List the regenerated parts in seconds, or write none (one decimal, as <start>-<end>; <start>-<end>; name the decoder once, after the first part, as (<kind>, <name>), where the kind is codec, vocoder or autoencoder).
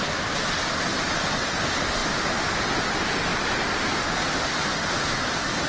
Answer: none